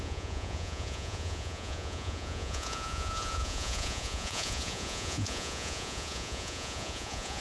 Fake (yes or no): yes